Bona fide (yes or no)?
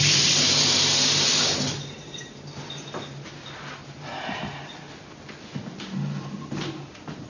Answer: yes